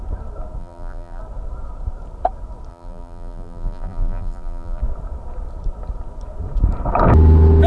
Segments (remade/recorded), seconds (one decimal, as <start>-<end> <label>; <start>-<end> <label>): 0.0-0.6 recorded; 0.6-1.2 remade; 1.2-2.7 recorded; 2.7-4.8 remade; 4.8-7.7 recorded